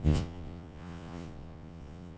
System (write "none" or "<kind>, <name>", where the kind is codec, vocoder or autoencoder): vocoder, Vocos